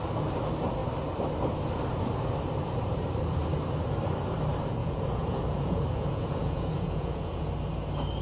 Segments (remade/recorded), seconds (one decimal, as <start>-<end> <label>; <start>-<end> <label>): 0.0-4.8 recorded; 4.8-7.5 remade; 7.5-8.2 recorded